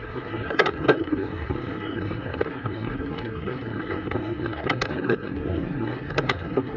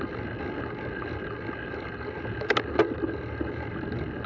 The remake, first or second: first